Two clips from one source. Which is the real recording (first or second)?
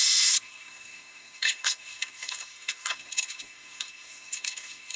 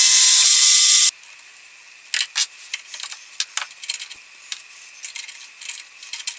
second